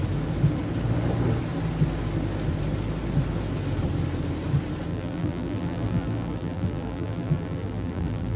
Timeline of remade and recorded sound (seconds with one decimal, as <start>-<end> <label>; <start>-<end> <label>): 0.0-4.9 recorded; 4.9-8.4 remade